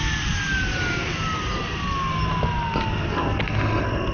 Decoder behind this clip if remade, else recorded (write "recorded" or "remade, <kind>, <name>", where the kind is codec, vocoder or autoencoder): recorded